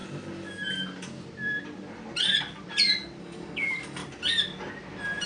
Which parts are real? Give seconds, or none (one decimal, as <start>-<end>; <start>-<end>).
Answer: 0.0-3.2; 4.0-5.3